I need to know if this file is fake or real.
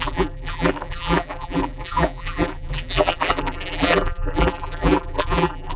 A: fake